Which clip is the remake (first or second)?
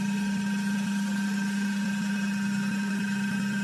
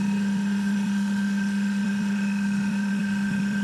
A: second